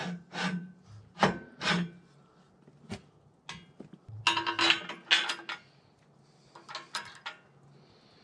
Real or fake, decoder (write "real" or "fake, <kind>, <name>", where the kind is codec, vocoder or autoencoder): real